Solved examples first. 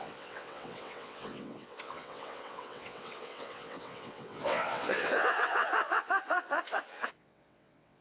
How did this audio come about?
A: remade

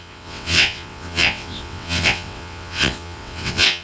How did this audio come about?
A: remade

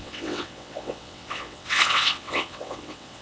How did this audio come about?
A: remade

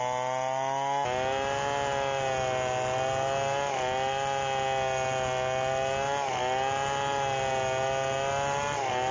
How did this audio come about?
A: recorded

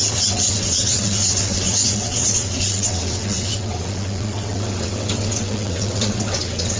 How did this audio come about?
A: remade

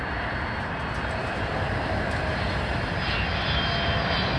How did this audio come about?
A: recorded